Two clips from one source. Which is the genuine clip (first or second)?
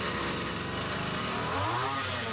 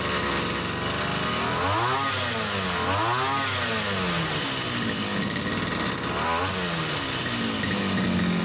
second